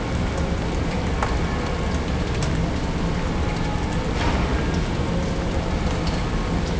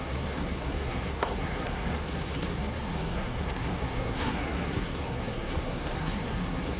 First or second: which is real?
first